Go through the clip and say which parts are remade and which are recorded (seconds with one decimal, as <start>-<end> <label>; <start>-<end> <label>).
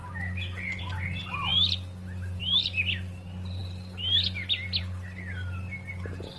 0.0-6.4 recorded